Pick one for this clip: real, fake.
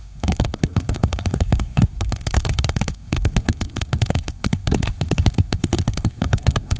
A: fake